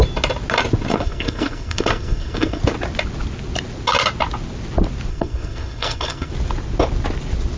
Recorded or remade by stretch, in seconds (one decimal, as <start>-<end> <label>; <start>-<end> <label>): 0.0-0.9 recorded; 0.9-2.6 remade; 2.6-5.1 recorded; 5.1-6.3 remade; 6.3-7.6 recorded